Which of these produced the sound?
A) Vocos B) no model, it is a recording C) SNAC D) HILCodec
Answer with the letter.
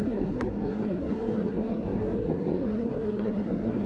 C